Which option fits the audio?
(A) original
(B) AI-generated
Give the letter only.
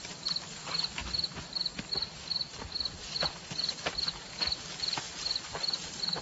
A